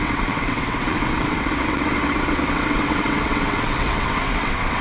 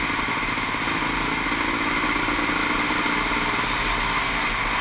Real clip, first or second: second